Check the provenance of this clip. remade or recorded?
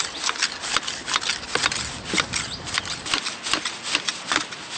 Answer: recorded